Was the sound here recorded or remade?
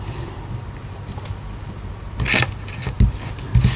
recorded